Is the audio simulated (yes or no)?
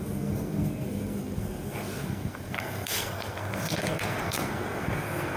yes